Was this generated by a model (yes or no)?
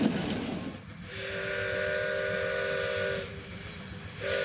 no